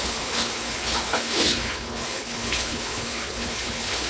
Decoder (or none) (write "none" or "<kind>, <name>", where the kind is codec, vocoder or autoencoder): codec, HILCodec